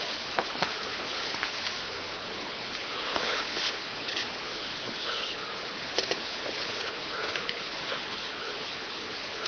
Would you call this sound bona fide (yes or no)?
no